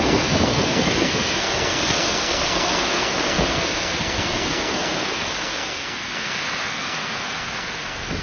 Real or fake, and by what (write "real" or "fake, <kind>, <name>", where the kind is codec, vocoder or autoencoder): fake, codec, SNAC